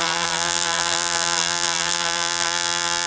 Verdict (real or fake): fake